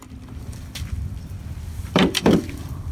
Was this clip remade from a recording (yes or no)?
yes